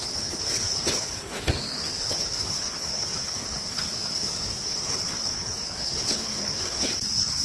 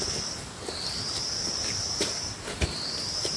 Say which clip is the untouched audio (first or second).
second